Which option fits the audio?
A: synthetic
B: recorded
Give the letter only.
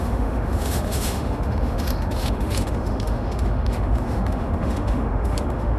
A